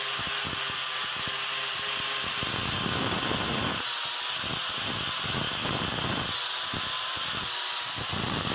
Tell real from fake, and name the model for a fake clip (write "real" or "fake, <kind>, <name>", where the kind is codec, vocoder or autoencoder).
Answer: real